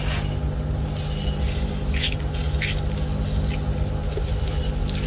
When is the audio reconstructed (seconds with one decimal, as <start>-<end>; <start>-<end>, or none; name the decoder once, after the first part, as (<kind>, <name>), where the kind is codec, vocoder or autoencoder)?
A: none